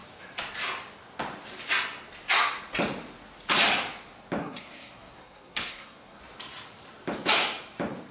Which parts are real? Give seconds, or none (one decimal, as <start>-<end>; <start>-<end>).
0.0-4.4; 6.2-8.1